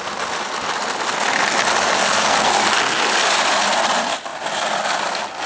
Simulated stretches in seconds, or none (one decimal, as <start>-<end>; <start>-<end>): 2.0-2.6

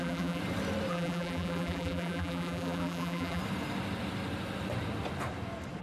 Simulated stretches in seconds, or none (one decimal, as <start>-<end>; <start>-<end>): 0.0-0.4; 0.9-3.4

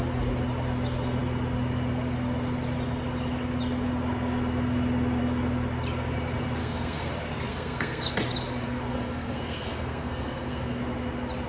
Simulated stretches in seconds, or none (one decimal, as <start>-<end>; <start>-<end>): 6.6-7.1; 7.5-8.1; 8.9-10.8

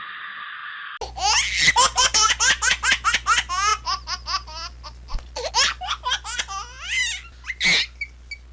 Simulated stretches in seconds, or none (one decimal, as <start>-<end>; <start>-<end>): none

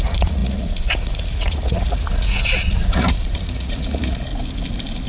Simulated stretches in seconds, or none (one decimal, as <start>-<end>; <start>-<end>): 0.0-4.3

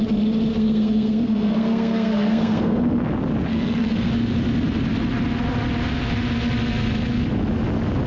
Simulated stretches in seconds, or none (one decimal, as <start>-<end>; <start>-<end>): 0.5-2.8; 3.5-4.1

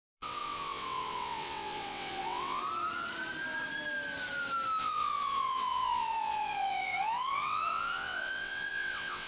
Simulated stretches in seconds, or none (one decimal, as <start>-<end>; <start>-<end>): 0.0-2.6; 4.8-9.3